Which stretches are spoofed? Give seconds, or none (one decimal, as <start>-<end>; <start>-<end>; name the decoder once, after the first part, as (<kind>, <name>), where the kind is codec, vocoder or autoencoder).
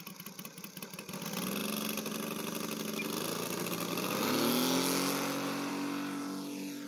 none